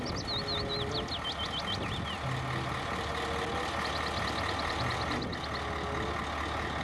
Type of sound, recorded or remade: recorded